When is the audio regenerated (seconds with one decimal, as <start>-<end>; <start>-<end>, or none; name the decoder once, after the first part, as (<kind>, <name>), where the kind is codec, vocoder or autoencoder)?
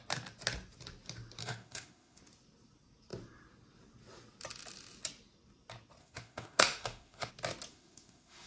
1.4-2.2 (autoencoder, DAC-VAE); 6.0-7.3; 7.7-8.5